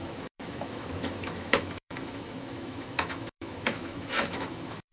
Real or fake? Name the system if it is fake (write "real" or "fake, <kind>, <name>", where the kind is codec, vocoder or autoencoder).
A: fake, autoencoder, DAC-VAE